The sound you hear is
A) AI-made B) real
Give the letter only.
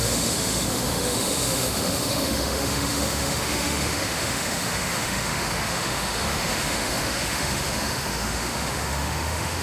A